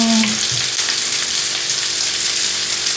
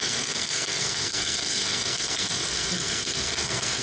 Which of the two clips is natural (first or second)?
first